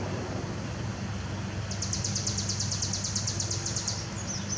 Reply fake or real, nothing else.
fake